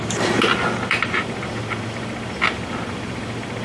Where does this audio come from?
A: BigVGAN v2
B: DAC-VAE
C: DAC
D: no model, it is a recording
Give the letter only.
A